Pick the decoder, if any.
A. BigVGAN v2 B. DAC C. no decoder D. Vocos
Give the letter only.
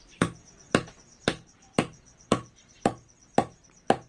A